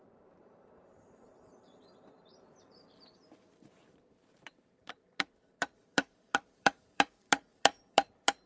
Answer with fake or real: fake